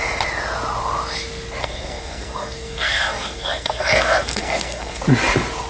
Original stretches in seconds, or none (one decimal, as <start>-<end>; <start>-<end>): 0.0-1.6; 5.0-5.7